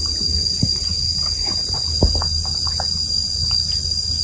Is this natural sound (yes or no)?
yes